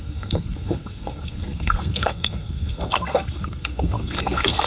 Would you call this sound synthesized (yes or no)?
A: yes